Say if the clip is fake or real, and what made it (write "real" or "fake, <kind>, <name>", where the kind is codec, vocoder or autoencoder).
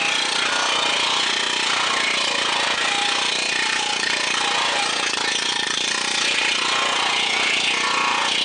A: fake, vocoder, Vocos